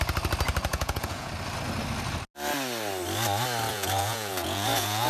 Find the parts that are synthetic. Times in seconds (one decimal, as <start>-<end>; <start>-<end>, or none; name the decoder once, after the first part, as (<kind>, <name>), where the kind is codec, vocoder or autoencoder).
0.7-1.3 (vocoder, Vocos); 3.7-5.1